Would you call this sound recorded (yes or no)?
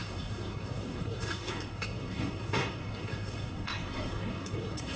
no